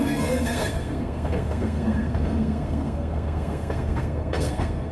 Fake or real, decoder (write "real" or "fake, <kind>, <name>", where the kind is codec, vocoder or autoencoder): fake, codec, SNAC